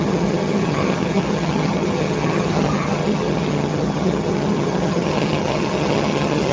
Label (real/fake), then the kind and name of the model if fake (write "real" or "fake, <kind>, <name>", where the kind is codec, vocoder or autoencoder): fake, vocoder, HiFi-GAN